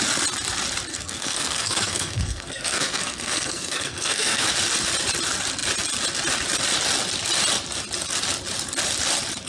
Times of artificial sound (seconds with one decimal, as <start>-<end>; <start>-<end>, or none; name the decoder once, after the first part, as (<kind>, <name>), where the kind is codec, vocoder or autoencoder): 0.9-4.5 (codec, SNAC)